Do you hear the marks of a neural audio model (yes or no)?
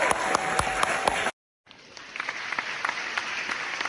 no